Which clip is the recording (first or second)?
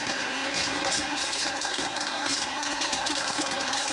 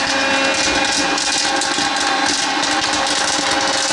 second